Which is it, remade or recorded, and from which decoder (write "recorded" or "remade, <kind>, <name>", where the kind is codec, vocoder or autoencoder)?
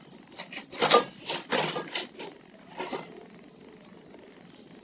recorded